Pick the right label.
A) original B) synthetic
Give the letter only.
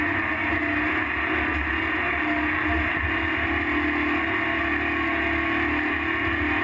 A